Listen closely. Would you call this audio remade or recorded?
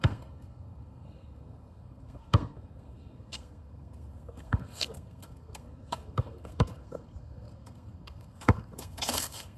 remade